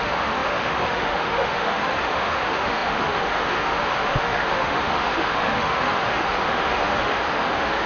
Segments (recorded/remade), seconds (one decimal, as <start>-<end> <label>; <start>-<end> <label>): 0.0-7.9 remade